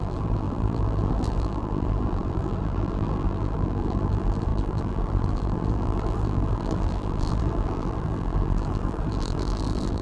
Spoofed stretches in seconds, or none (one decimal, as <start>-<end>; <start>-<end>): 0.0-10.0